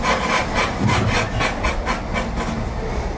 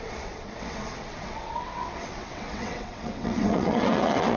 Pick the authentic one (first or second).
first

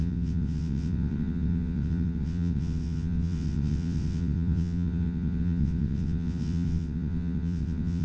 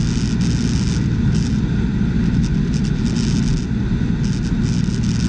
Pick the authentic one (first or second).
second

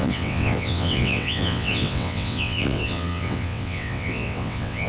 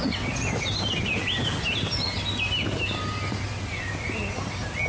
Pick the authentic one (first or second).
second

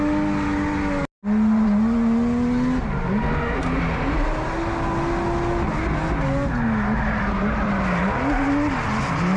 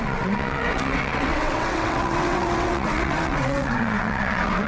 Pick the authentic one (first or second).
first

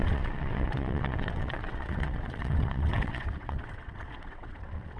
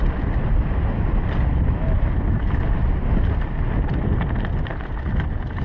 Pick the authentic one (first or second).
second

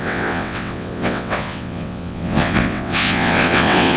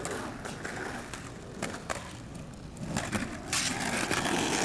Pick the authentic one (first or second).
second